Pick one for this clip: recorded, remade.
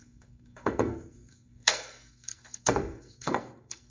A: remade